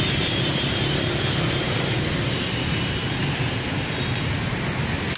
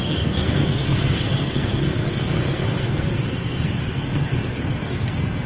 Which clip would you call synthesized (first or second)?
second